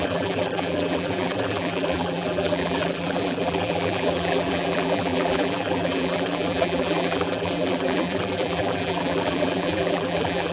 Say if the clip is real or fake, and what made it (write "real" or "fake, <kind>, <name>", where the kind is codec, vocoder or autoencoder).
fake, vocoder, BigVGAN v2